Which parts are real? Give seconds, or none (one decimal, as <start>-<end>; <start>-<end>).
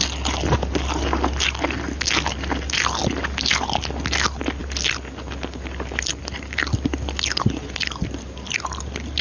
0.0-9.2